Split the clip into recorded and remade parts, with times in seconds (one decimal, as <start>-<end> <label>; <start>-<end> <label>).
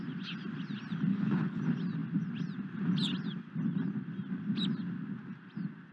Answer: 0.0-1.1 recorded; 1.1-1.6 remade; 1.6-5.9 recorded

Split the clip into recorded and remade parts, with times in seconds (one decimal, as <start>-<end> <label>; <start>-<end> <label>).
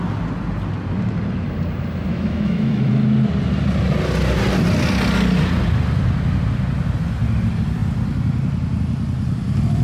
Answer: 0.0-2.1 recorded; 2.1-2.9 remade; 2.9-9.8 recorded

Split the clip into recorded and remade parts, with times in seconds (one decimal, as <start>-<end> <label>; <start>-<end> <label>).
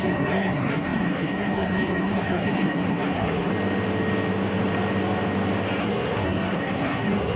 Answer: 0.0-3.5 remade; 3.5-5.8 recorded; 5.8-7.4 remade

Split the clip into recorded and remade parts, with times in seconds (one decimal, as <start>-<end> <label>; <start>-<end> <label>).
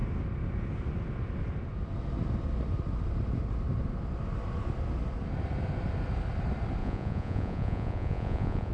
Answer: 0.0-6.8 recorded; 6.8-8.7 remade